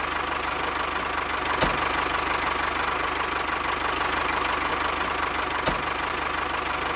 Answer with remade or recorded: recorded